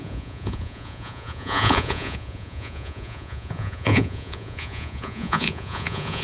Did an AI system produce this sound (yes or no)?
yes